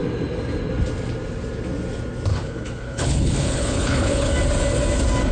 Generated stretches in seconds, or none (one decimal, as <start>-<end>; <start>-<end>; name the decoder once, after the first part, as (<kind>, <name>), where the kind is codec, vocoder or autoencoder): 2.3-4.3 (codec, HILCodec)